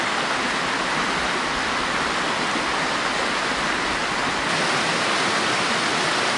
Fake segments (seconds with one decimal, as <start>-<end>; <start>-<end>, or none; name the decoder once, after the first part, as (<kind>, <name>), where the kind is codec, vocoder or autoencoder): none